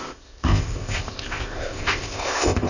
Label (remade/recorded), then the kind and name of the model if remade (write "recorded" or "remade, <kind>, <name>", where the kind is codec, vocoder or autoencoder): remade, codec, ZipCodec